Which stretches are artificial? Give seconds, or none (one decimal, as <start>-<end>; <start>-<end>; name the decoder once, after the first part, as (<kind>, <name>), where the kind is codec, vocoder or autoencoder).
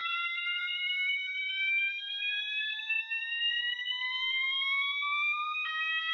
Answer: 0.0-3.2 (vocoder, BigVGAN v2)